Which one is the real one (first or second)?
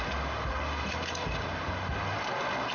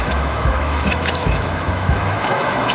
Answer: first